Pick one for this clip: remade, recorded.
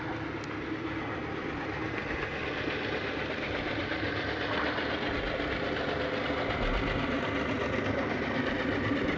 recorded